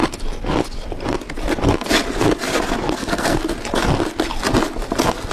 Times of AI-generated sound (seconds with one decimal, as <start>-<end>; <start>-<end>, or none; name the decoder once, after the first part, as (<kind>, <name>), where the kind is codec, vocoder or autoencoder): 2.8-3.4 (codec, SNAC)